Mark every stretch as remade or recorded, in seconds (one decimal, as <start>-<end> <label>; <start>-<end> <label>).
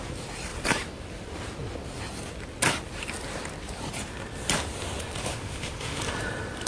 0.0-5.3 recorded; 5.3-6.0 remade; 6.0-6.7 recorded